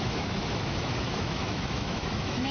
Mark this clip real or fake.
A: fake